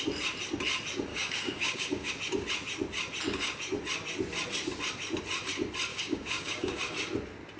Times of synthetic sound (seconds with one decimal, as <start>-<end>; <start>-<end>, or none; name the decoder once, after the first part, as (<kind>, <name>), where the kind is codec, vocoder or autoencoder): 1.1-2.1 (codec, DAC); 5.9-6.8